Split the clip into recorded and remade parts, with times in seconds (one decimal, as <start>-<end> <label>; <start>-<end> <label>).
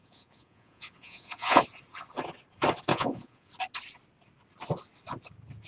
0.0-1.6 remade; 1.6-2.9 recorded; 2.9-3.5 remade; 3.5-5.7 recorded